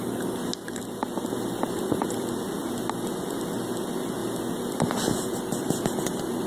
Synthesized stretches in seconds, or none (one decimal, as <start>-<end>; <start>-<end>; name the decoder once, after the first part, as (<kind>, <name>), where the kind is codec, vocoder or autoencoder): 1.0-2.6 (vocoder, BigVGAN v2)